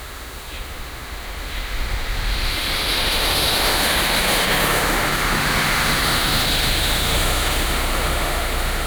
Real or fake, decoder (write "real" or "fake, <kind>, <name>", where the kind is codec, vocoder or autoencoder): fake, autoencoder, DAC-VAE